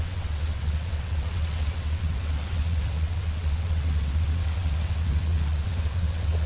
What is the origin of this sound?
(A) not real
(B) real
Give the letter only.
A